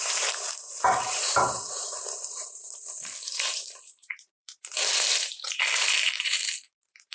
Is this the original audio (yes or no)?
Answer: no